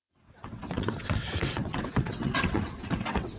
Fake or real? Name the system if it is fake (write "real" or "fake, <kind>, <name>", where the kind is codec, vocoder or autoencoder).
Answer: fake, vocoder, WaveNeXt